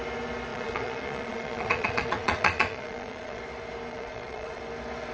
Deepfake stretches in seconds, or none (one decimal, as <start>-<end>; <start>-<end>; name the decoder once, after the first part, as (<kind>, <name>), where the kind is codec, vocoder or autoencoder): 0.5-3.4 (vocoder, Vocos); 3.9-4.6